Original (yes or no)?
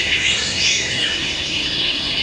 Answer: no